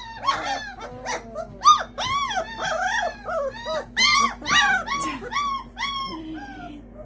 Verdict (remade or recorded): recorded